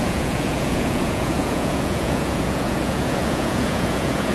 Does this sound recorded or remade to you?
remade